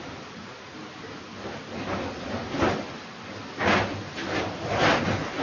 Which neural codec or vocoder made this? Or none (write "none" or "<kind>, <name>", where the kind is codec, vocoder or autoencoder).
none